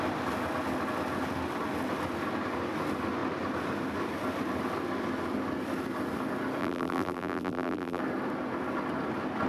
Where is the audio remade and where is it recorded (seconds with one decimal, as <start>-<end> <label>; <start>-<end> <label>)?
0.0-6.6 recorded; 6.6-8.0 remade; 8.0-9.5 recorded